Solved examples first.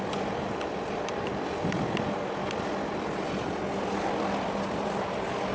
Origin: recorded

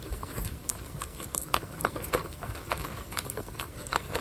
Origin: remade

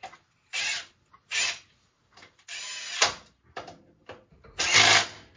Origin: recorded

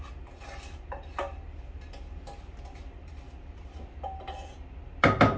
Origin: recorded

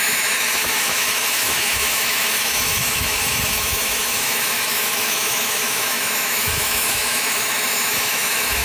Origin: remade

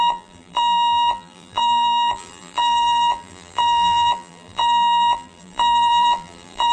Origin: remade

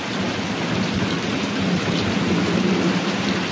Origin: recorded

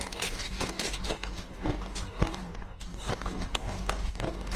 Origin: remade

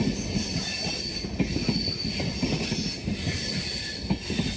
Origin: recorded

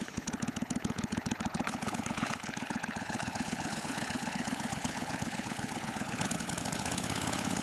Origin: remade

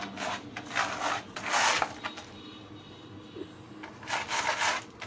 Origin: recorded